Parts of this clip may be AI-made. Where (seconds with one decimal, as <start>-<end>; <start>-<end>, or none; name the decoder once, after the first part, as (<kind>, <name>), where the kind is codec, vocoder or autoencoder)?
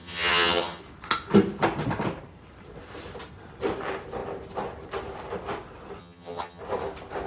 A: 0.0-0.8 (vocoder, HiFi-GAN); 6.0-6.6